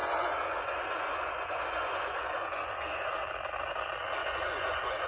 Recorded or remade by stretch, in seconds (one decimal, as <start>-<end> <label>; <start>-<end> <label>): 0.0-3.1 remade; 3.1-4.2 recorded; 4.2-5.1 remade